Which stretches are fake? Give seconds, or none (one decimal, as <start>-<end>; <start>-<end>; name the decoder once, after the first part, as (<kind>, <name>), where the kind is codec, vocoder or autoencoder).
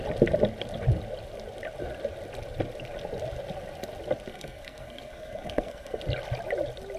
4.3-6.0 (codec, SNAC)